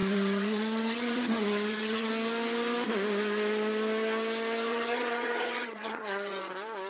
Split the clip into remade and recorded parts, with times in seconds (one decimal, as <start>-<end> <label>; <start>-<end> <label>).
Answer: 0.0-2.1 remade; 2.1-4.7 recorded; 4.7-6.5 remade; 6.5-6.9 recorded